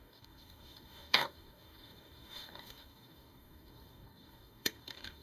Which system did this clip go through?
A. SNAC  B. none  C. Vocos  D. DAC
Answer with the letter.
D